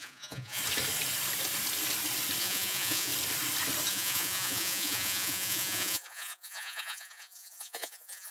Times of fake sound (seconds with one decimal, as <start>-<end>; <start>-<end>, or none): 0.0-0.6; 2.4-3.1; 3.9-8.3